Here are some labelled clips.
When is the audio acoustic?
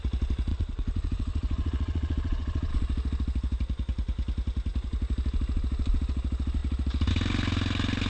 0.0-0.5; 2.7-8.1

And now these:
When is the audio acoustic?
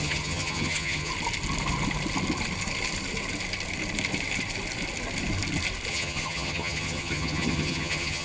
1.1-5.9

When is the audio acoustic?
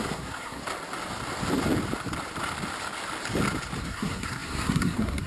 0.6-3.8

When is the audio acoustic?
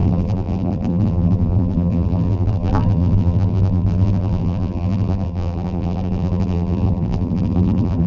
none